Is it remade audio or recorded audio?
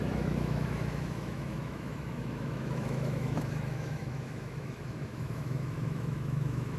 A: remade